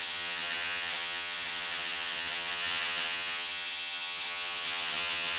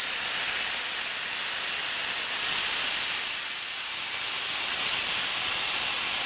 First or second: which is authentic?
second